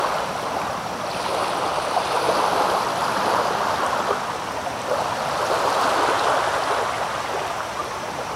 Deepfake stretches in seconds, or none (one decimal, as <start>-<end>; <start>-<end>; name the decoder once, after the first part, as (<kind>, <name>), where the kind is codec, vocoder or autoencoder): none